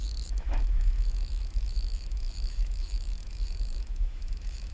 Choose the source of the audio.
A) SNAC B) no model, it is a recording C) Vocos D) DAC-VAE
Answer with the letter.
D